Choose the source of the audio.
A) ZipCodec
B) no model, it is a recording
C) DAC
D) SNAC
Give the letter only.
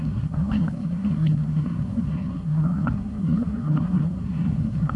D